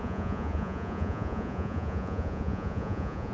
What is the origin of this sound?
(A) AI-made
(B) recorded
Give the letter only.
A